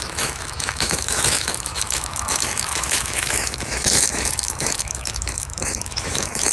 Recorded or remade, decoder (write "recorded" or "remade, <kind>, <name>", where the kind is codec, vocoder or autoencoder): remade, autoencoder, DAC-VAE